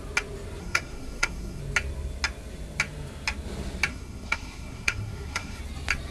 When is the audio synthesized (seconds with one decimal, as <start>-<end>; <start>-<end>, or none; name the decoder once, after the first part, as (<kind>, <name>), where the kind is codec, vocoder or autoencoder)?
0.6-1.6 (codec, SNAC); 3.9-5.6